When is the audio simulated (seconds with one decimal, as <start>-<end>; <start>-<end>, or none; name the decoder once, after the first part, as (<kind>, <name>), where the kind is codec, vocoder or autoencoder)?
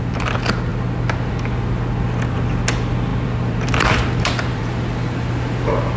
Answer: 3.1-4.6 (vocoder, BigVGAN v2)